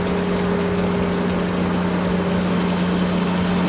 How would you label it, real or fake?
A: real